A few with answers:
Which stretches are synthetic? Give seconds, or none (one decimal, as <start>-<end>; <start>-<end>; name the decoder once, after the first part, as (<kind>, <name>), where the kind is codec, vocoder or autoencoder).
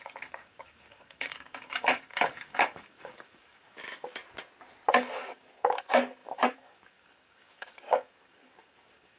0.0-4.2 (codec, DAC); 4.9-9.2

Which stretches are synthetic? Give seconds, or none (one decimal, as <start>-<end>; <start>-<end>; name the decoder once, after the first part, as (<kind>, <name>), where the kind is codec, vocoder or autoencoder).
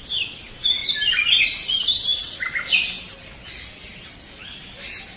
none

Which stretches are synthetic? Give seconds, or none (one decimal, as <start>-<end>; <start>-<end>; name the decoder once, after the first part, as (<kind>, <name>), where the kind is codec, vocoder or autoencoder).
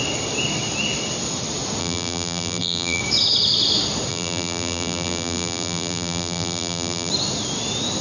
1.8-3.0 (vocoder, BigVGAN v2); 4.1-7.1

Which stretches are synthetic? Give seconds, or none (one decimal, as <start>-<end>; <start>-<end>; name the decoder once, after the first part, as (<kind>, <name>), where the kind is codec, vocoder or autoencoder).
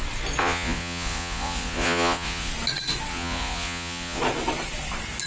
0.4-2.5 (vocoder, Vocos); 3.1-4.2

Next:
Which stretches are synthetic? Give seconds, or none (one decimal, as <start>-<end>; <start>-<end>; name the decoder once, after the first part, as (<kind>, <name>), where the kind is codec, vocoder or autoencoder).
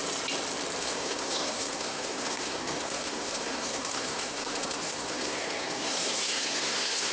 0.8-7.1 (codec, SNAC)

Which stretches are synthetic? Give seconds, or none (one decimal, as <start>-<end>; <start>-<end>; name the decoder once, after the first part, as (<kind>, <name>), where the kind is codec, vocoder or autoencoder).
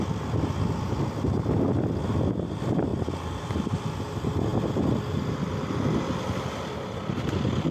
none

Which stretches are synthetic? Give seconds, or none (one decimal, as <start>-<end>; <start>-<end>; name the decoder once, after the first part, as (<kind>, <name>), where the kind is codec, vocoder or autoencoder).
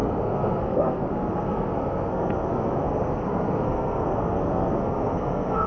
0.0-5.7 (codec, SNAC)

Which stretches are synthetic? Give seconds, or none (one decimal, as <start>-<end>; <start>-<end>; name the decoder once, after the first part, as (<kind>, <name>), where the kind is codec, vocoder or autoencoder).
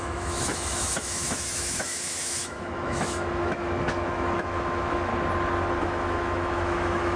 0.0-5.1 (autoencoder, DAC-VAE); 5.8-7.2